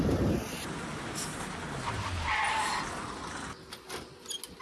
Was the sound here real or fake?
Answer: real